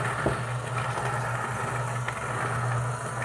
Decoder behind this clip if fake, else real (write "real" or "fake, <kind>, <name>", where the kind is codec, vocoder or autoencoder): real